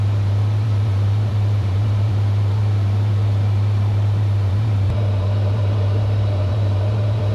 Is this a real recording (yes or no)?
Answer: no